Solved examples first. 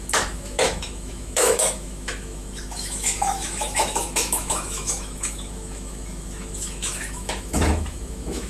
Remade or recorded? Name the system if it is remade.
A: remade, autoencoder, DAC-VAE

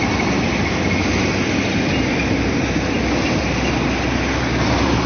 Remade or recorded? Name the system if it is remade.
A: recorded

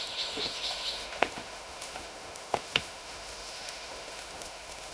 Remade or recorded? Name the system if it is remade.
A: remade, autoencoder, DAC-VAE